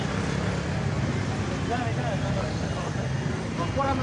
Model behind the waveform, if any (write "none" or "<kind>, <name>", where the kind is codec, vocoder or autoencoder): none